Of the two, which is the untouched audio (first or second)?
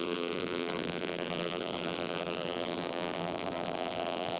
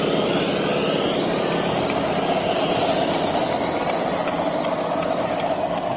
second